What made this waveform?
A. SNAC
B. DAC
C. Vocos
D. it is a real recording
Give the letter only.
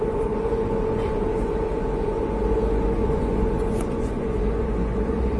C